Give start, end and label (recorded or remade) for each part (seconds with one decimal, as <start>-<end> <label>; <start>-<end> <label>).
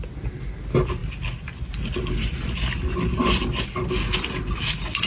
0.0-5.1 recorded